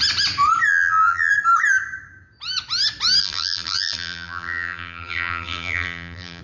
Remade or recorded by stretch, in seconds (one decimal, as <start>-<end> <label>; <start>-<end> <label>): 0.0-0.7 recorded; 0.7-1.3 remade; 1.3-3.2 recorded; 3.2-6.4 remade